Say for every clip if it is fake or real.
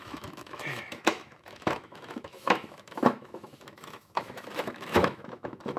fake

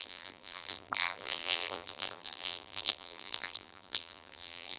fake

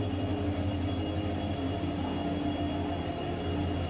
real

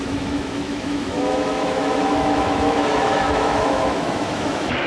fake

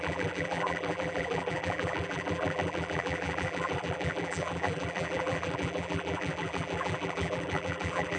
fake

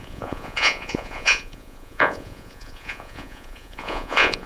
fake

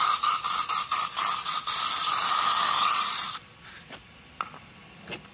real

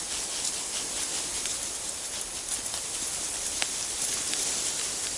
fake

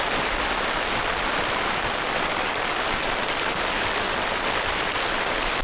real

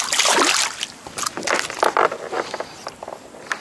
real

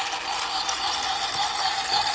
real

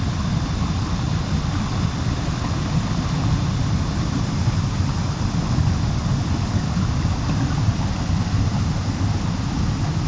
real